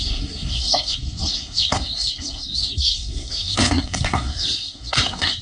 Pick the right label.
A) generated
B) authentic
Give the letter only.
A